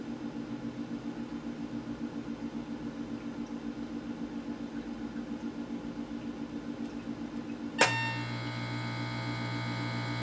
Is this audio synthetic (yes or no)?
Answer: no